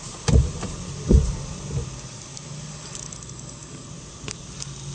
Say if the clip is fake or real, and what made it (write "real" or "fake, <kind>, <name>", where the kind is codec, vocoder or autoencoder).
real